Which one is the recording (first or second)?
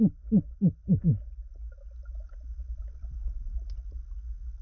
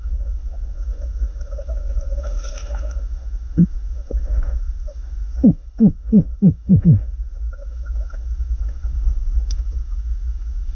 first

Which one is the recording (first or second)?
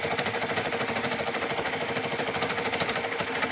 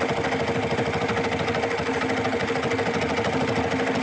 second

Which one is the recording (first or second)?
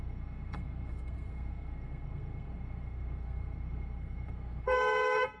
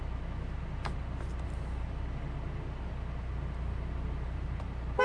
second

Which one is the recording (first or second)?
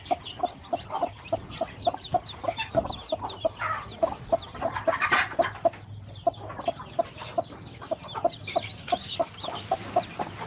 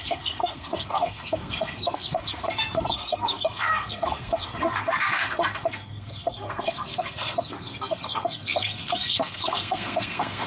first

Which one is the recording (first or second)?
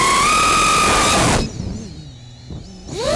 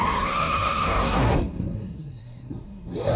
first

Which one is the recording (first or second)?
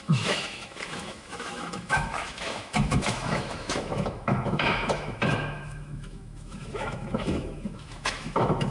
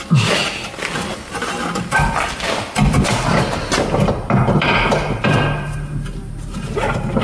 second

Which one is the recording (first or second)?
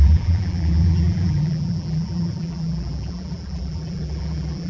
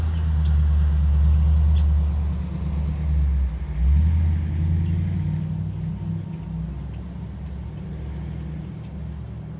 second